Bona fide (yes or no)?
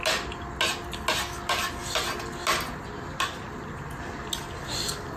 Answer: yes